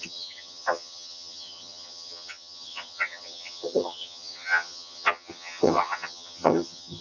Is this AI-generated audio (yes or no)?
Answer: yes